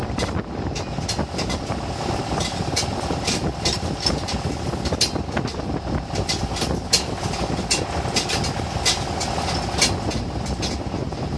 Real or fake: real